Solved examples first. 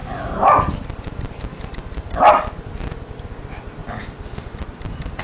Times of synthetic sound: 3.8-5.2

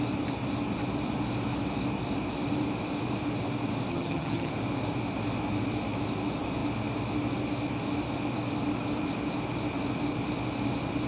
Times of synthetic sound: 3.9-4.5

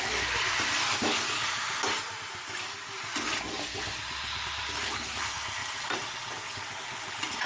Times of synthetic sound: 5.6-6.3

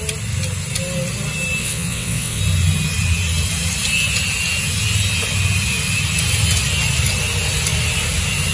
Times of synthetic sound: 1.6-2.4

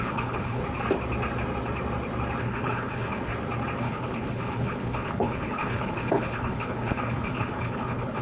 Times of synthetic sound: 0.0-0.6; 2.4-3.3; 3.8-8.2